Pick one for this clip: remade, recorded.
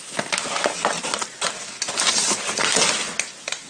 recorded